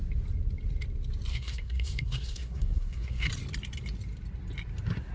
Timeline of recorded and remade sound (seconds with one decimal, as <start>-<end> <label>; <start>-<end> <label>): 0.0-1.3 recorded; 1.3-3.3 remade; 3.3-5.1 recorded